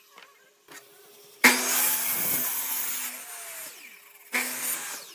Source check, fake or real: real